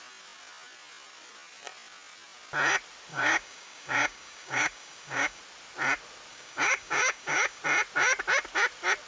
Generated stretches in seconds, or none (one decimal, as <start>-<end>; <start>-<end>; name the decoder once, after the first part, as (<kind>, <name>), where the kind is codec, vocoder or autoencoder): 3.1-5.4 (codec, DAC); 6.3-7.6